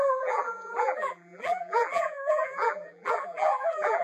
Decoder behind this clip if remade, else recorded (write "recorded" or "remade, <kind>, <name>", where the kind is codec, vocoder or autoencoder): remade, vocoder, BigVGAN v2